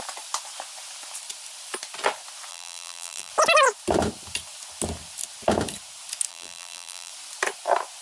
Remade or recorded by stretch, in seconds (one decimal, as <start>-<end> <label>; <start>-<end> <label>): 0.0-2.5 recorded; 2.5-3.3 remade; 3.3-6.3 recorded; 6.3-7.1 remade; 7.1-8.0 recorded

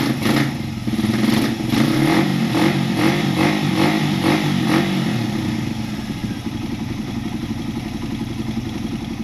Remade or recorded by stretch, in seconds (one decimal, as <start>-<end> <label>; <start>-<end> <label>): 0.0-2.3 recorded; 2.3-3.7 remade; 3.7-6.2 recorded; 6.2-7.5 remade; 7.5-9.2 recorded

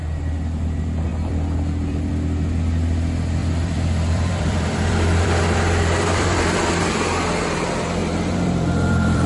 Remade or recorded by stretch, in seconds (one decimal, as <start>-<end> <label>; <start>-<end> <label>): 0.0-1.1 recorded; 1.1-2.1 remade; 2.1-3.4 recorded; 3.4-6.8 remade; 6.8-8.0 recorded; 8.0-9.3 remade

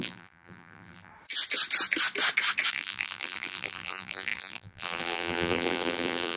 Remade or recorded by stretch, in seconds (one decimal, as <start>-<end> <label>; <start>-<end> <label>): 0.0-1.1 remade; 1.1-2.7 recorded; 2.7-6.4 remade

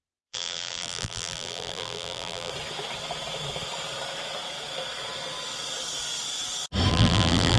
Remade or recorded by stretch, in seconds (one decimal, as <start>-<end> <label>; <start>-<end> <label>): 0.0-2.5 remade; 2.5-6.9 recorded; 6.9-7.6 remade

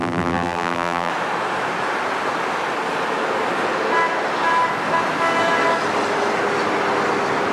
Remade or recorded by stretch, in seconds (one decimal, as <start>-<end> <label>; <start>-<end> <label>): 0.0-1.1 remade; 1.1-7.5 recorded

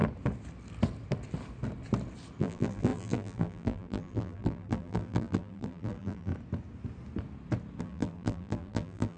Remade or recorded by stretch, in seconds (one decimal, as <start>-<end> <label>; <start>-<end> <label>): 0.0-2.4 recorded; 2.4-6.3 remade; 6.3-7.8 recorded; 7.8-9.2 remade

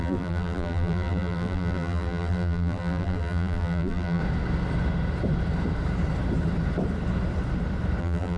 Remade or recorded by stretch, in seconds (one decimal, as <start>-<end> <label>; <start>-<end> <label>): 0.0-4.2 remade; 4.2-8.0 recorded; 8.0-8.4 remade